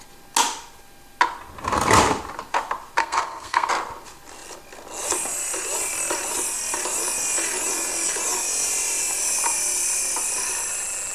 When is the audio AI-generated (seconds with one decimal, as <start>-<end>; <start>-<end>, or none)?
3.0-3.7